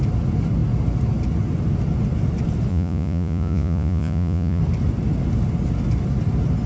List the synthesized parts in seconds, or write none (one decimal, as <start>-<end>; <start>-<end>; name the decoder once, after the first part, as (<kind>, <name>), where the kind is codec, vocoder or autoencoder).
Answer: 2.7-4.6 (vocoder, Vocos)